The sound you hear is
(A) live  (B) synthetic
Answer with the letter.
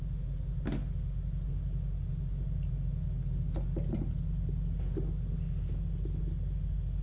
A